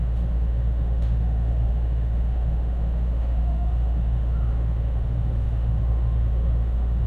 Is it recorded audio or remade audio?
remade